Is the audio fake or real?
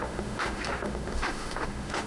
fake